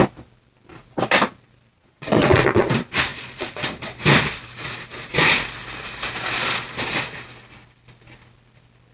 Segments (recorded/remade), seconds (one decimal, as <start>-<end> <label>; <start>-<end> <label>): 0.0-1.7 recorded; 1.7-2.7 remade; 2.7-3.1 recorded; 3.1-3.7 remade; 3.7-8.9 recorded